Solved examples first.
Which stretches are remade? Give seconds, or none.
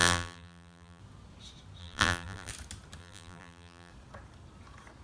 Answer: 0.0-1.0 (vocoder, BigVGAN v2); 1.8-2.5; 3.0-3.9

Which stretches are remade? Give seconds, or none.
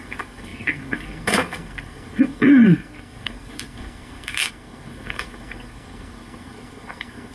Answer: 0.0-7.3 (codec, SNAC)